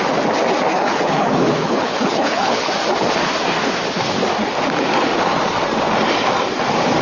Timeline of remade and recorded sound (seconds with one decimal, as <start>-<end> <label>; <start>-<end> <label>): 0.0-0.7 recorded; 0.7-2.7 remade; 2.7-7.0 recorded